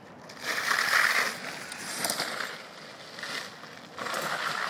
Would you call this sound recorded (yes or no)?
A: yes